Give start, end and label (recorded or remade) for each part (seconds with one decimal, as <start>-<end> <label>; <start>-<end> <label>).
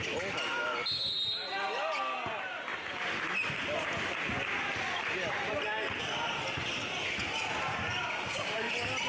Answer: 0.0-8.0 recorded; 8.0-8.7 remade; 8.7-9.1 recorded